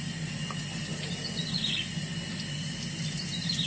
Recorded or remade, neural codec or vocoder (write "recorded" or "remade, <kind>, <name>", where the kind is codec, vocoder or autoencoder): recorded